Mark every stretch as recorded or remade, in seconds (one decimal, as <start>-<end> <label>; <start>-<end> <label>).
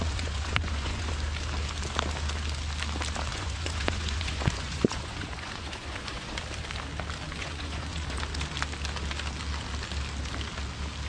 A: 0.0-1.1 remade; 1.1-3.3 recorded; 3.3-6.4 remade; 6.4-7.4 recorded; 7.4-8.2 remade; 8.2-11.1 recorded